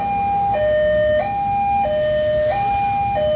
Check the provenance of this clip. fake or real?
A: real